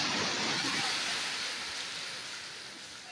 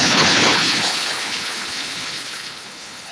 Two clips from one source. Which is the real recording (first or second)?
first